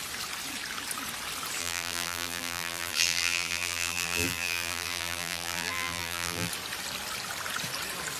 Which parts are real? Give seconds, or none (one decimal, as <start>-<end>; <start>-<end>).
0.0-1.6; 6.5-8.2